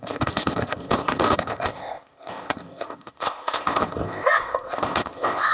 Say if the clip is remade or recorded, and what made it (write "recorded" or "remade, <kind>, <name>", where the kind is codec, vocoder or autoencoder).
remade, codec, ZipCodec